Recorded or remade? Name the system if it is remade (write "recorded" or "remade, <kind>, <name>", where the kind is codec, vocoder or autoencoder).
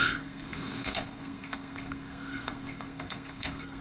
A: remade, codec, SNAC